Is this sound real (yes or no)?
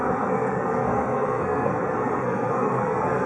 no